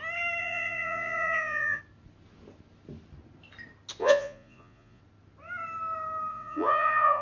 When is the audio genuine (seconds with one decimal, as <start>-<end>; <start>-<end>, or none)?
0.0-0.4; 1.8-4.0; 5.0-6.3